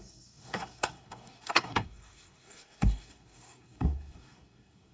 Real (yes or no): no